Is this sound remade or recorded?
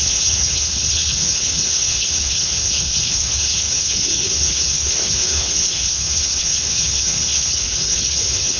remade